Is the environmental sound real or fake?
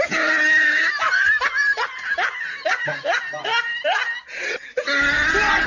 real